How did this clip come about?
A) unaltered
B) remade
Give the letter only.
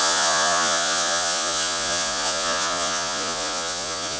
B